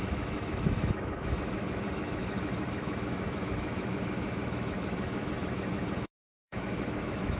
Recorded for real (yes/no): no